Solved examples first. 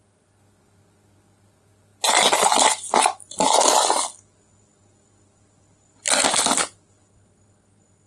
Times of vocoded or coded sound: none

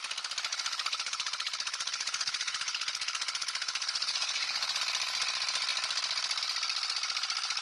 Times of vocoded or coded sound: 0.5-4.8 (codec, HILCodec)

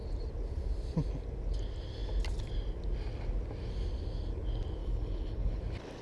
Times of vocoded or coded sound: 4.8-5.6 (codec, HILCodec)

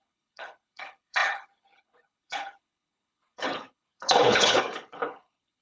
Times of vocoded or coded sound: 0.0-5.6 (codec, HILCodec)

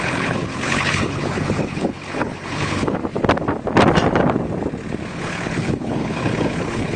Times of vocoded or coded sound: 0.0-3.0 (codec, HILCodec); 5.1-7.0